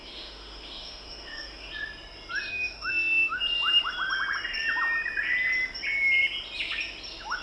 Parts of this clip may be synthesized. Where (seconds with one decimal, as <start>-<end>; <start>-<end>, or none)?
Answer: 0.0-1.7; 2.5-3.4